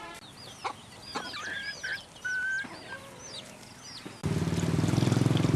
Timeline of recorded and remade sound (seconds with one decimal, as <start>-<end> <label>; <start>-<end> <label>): 0.0-1.9 remade; 1.9-5.6 recorded